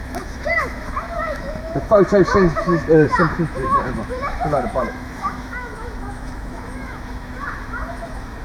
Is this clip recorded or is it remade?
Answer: remade